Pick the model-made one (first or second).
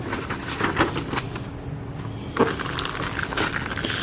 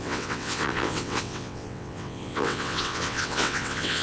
second